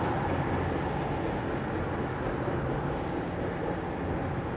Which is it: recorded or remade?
recorded